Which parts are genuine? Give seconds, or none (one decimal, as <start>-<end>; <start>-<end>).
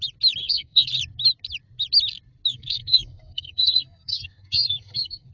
0.0-0.4; 0.9-2.5